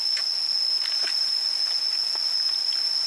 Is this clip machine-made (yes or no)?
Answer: no